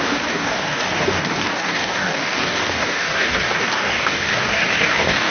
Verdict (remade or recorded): remade